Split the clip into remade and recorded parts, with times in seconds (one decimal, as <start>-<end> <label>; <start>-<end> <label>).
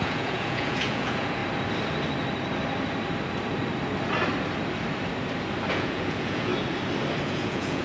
0.0-1.4 remade; 1.4-5.7 recorded; 5.7-6.5 remade; 6.5-7.2 recorded; 7.2-7.8 remade